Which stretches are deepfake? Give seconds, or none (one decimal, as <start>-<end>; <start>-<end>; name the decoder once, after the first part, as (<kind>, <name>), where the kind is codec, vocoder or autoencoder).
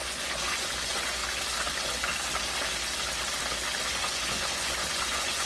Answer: 0.0-1.2 (vocoder, Vocos); 1.7-2.1; 3.9-5.5